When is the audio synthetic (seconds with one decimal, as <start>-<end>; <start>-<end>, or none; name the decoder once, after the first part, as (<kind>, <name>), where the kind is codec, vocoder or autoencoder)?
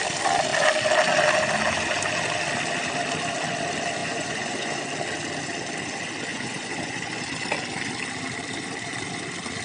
4.0-4.9 (vocoder, Vocos); 6.3-7.2